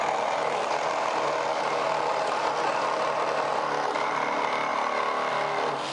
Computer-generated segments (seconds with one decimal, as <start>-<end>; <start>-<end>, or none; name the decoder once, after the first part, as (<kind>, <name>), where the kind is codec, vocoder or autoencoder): none